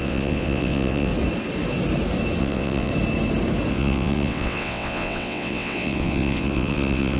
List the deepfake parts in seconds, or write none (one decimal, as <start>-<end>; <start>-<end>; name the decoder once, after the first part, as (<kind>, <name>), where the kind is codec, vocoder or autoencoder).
0.0-1.1 (vocoder, WaveNeXt); 2.4-2.9; 3.7-7.2